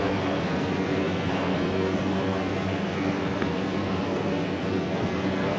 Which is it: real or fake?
fake